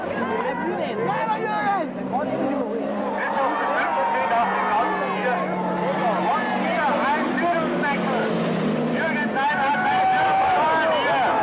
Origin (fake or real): real